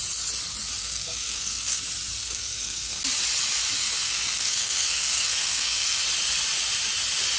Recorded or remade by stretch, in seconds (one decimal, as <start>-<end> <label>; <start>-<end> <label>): 0.0-0.8 recorded; 0.8-1.8 remade; 1.8-2.2 recorded; 2.2-3.0 remade; 3.0-3.8 recorded; 3.8-6.0 remade; 6.0-7.4 recorded